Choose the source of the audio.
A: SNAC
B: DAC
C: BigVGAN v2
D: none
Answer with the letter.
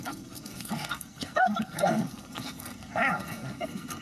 A